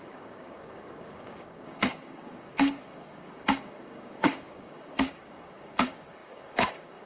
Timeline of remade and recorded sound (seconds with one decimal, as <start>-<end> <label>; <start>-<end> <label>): 0.0-7.1 remade